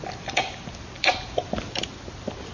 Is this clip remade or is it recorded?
recorded